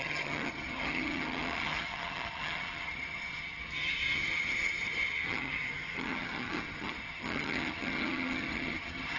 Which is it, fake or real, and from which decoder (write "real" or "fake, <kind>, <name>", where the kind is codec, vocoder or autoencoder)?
fake, vocoder, HiFi-GAN